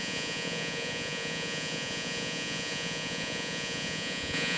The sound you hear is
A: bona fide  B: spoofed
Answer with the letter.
B